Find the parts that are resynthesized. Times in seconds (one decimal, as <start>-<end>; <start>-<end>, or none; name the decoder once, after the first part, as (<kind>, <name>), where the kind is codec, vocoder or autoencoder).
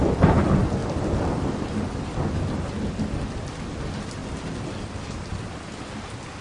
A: none